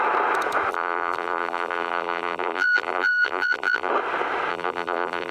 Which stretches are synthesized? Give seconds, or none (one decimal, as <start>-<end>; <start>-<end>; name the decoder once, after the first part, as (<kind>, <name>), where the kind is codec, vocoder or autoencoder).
0.7-3.9 (vocoder, BigVGAN v2); 4.5-5.3